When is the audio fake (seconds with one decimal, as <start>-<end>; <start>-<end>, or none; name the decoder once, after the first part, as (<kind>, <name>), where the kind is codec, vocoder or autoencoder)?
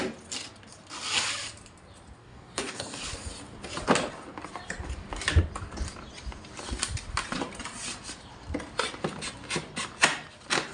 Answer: 2.2-3.0 (codec, DAC)